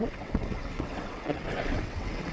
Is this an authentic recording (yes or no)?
no